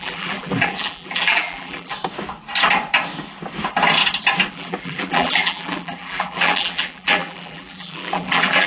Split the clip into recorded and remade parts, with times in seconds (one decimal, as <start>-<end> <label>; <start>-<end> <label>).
0.0-1.9 remade; 1.9-4.5 recorded; 4.5-8.7 remade